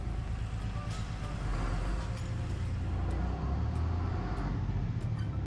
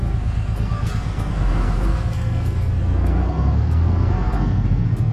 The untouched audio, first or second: first